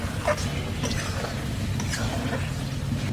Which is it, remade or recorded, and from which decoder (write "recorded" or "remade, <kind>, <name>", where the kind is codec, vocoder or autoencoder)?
recorded